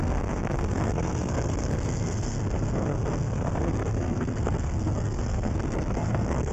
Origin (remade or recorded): remade